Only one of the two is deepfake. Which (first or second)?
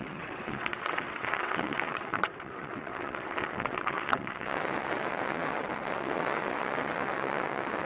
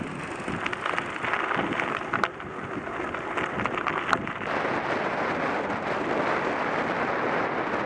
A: first